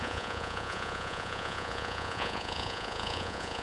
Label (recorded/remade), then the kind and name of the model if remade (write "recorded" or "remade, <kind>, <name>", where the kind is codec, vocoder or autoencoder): remade, vocoder, Vocos